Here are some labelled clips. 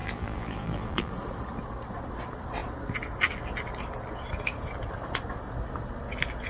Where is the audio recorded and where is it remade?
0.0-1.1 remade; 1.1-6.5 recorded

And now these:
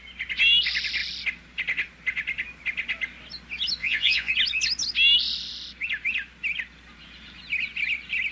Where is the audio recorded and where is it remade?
0.0-3.8 recorded; 3.8-4.3 remade; 4.3-8.3 recorded

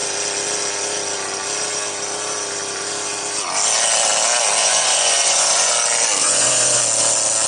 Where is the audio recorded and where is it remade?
0.0-4.6 recorded; 4.6-5.7 remade; 5.7-6.2 recorded; 6.2-6.8 remade; 6.8-7.5 recorded

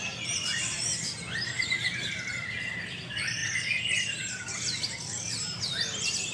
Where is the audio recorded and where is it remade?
0.0-3.4 remade; 3.4-4.4 recorded; 4.4-6.3 remade

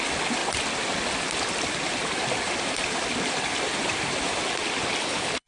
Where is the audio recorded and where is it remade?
0.0-5.0 recorded; 5.0-5.5 remade